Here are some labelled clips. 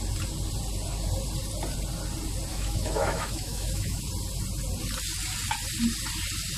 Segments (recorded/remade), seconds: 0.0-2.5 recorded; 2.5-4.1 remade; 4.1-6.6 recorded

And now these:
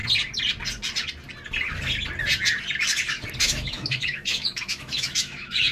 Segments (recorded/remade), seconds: 0.0-3.4 recorded; 3.4-5.7 remade

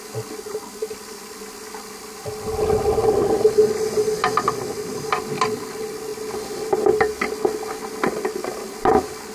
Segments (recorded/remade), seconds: 0.0-9.3 recorded

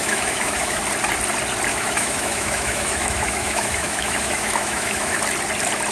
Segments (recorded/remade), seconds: 0.0-0.8 remade; 0.8-1.7 recorded; 1.7-5.2 remade; 5.2-5.9 recorded

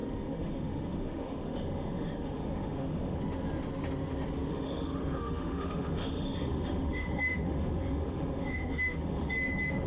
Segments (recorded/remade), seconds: 0.0-3.2 remade; 3.2-4.5 recorded; 4.5-9.3 remade; 9.3-9.9 recorded

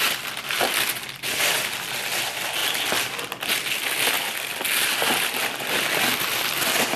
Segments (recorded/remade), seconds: 0.0-7.0 recorded

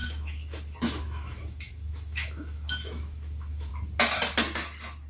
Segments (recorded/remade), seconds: 0.0-3.7 remade; 3.7-5.1 recorded